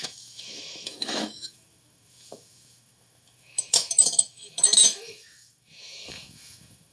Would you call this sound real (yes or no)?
no